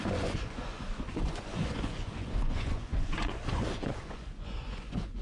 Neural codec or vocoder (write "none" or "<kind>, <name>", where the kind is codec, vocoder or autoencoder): vocoder, Vocos